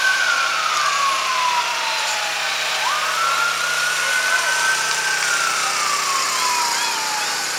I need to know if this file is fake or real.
real